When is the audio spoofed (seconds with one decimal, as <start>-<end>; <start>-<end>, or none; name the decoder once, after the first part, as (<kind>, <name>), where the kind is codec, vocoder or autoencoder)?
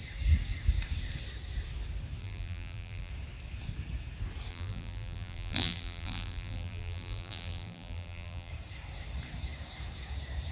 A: 2.2-3.1 (vocoder, BigVGAN v2); 4.5-8.5